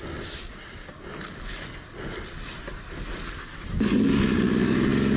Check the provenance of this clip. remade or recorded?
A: recorded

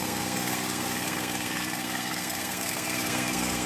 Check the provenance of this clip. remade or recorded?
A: remade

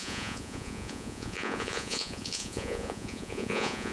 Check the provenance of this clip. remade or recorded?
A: remade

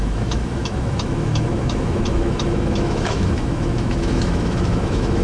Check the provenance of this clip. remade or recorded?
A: remade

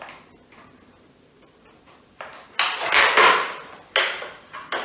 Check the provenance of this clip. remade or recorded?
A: recorded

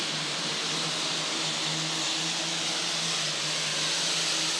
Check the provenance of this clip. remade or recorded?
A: recorded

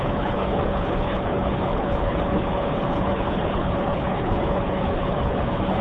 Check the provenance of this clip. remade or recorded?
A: remade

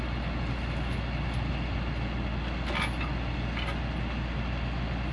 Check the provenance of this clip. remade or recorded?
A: recorded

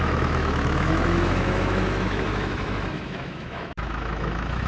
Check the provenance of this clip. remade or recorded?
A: remade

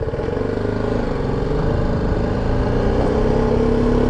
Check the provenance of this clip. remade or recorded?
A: recorded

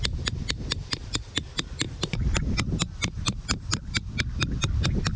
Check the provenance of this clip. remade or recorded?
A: remade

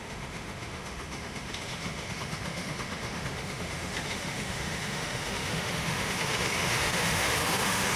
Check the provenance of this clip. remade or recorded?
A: remade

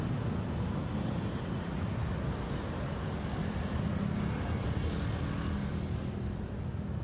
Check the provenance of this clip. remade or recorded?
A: recorded